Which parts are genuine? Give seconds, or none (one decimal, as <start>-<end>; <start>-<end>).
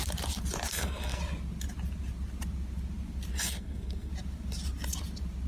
0.0-0.7; 1.2-3.3; 4.1-5.5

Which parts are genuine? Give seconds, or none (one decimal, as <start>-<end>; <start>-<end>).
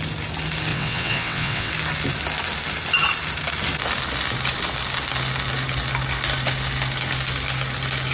0.0-0.7; 1.7-8.1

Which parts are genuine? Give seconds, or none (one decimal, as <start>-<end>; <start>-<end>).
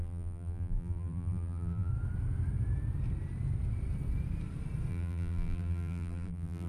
1.9-4.9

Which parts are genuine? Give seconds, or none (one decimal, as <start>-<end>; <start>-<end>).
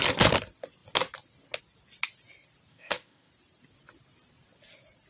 0.0-2.7; 3.3-5.1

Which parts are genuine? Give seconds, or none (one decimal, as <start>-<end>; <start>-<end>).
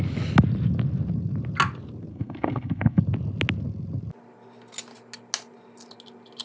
0.0-2.1; 3.0-6.4